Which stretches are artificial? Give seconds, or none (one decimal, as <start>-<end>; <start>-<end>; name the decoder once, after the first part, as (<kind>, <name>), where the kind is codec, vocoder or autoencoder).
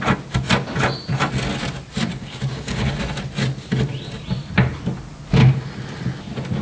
2.1-2.9 (codec, DAC)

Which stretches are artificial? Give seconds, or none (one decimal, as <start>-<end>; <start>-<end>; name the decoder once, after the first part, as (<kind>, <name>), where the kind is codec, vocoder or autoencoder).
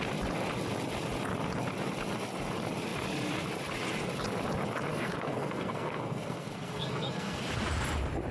4.9-7.4 (codec, SNAC)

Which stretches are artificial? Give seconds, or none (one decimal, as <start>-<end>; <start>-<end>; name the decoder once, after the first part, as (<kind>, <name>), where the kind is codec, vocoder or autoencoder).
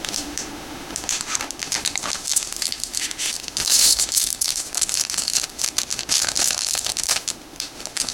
0.0-8.1 (autoencoder, DAC-VAE)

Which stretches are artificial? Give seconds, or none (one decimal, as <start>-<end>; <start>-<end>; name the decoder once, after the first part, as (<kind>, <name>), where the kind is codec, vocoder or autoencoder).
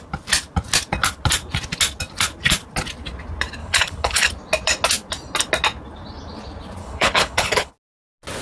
3.6-4.3 (codec, HILCodec); 6.8-7.7